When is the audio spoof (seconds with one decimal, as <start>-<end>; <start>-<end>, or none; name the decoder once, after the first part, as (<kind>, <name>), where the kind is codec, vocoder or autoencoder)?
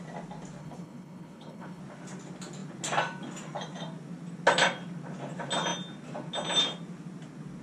0.6-1.8 (codec, HILCodec)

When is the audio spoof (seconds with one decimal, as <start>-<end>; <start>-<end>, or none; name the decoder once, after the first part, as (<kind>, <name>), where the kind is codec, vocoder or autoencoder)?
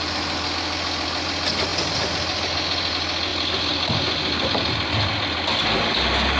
none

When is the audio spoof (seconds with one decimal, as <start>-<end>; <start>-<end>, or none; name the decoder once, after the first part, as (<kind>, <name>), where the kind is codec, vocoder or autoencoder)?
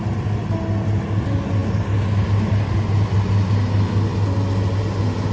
none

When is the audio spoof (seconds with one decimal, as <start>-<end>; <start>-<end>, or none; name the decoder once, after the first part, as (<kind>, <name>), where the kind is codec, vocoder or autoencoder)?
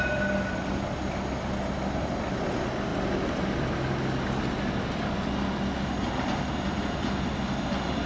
none